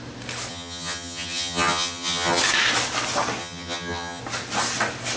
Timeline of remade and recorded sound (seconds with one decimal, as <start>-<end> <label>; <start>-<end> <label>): 0.0-0.5 recorded; 0.5-2.4 remade; 2.4-3.4 recorded; 3.4-4.2 remade; 4.2-5.2 recorded